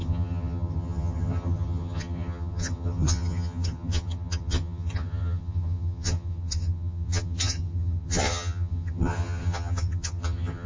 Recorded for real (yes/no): no